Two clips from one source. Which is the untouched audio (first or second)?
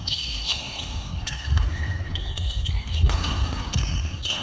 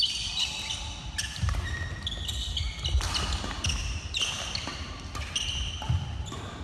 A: second